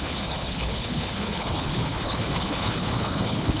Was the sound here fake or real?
fake